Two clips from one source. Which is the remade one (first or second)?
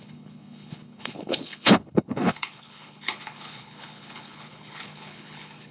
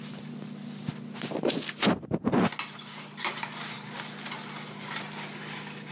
first